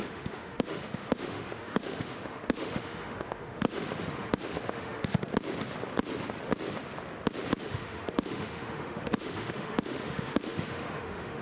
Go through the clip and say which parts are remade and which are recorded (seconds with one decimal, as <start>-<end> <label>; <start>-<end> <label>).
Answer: 0.0-5.3 remade; 5.3-7.6 recorded; 7.6-11.4 remade